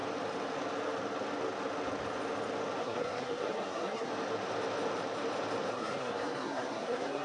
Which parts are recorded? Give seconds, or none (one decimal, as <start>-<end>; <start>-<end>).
0.0-2.8; 4.1-5.7